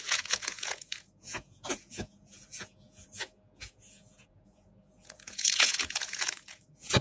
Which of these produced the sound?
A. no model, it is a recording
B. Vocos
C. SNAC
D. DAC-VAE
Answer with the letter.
B